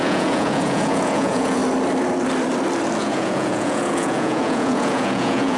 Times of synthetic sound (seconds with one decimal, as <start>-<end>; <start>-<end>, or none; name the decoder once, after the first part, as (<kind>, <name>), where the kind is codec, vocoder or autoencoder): 0.0-1.6 (vocoder, Vocos); 3.0-5.6